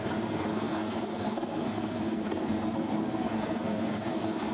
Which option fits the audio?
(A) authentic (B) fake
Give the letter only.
B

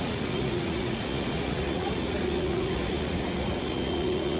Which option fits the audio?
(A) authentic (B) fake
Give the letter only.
B